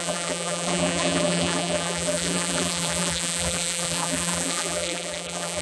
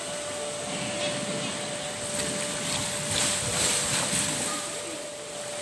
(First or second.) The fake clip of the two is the first